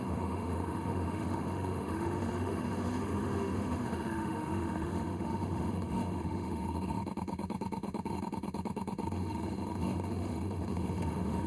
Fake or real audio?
fake